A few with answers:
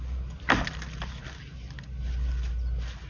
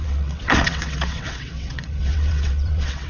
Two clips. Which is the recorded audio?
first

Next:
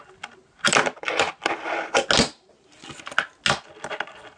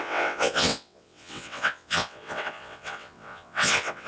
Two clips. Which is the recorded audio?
first